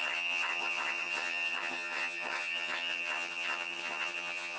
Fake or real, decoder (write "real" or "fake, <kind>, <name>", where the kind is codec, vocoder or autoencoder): fake, vocoder, HiFi-GAN